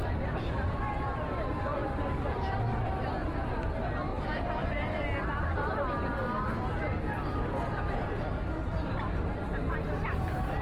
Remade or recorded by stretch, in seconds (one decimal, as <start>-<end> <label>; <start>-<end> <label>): 0.0-1.1 remade; 1.1-1.7 recorded; 1.7-2.3 remade; 2.3-4.1 recorded; 4.1-5.0 remade; 5.0-10.6 recorded